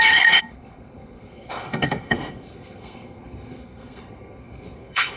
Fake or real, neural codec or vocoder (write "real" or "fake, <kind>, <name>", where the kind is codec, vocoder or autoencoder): fake, codec, SNAC